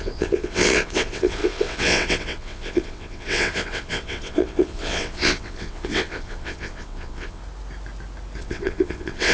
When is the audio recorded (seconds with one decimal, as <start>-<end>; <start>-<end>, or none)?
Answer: 7.4-8.4